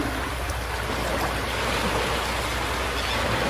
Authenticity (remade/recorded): recorded